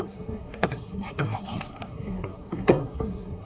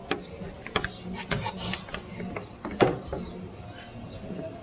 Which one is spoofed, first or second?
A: first